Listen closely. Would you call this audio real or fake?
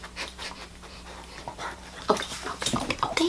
fake